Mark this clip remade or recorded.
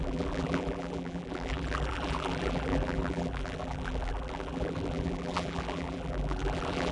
remade